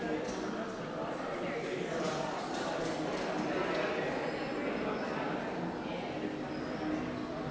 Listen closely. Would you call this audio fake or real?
real